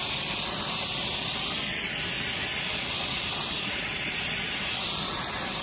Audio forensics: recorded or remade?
remade